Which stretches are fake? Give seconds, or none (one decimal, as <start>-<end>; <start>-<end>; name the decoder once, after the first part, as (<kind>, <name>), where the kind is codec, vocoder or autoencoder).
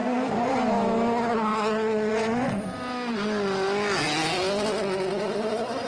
1.5-2.1 (vocoder, BigVGAN v2)